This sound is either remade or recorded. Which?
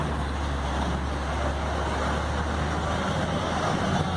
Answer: recorded